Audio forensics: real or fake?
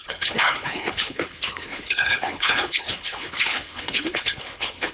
fake